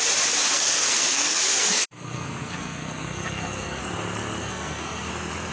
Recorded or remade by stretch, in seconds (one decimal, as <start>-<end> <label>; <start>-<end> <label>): 0.0-0.5 recorded; 0.5-3.8 remade; 3.8-4.4 recorded; 4.4-5.1 remade; 5.1-5.5 recorded